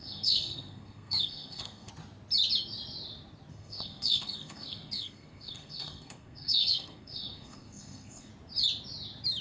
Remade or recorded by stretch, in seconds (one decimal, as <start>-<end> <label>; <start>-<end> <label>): 0.0-1.9 remade; 1.9-3.5 recorded; 3.5-8.3 remade; 8.3-9.4 recorded